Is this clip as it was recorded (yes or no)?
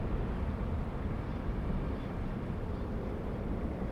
yes